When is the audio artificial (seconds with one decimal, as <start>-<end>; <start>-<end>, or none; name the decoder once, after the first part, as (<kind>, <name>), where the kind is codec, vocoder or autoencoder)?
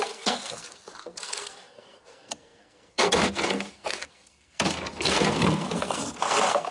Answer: 0.0-6.7 (codec, SNAC)